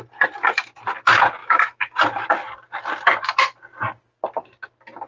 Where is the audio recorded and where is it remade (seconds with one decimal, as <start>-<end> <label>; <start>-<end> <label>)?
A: 0.0-1.4 recorded; 1.4-1.9 remade; 1.9-5.1 recorded